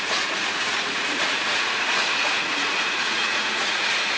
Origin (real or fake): fake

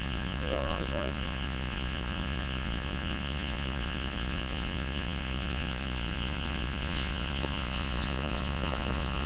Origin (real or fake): fake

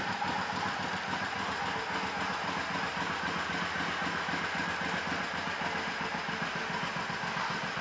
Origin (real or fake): real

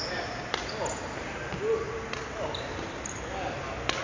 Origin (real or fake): real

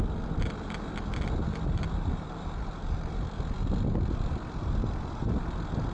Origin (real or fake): real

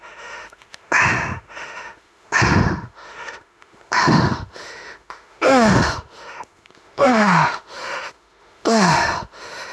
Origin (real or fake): fake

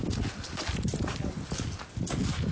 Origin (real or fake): real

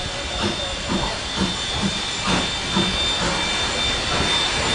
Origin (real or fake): real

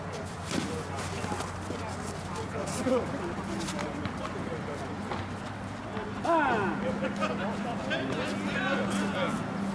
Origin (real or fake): real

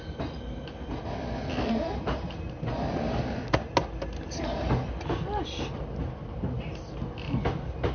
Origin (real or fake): real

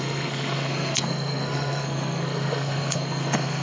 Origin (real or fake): fake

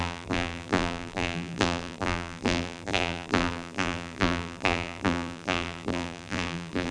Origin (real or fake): fake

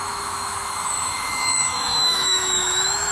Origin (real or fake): fake